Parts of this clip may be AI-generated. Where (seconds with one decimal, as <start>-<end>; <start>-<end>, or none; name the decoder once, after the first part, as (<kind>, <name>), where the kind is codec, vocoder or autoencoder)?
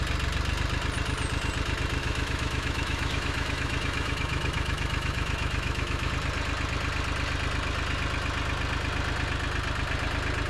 2.0-6.1 (autoencoder, DAC-VAE)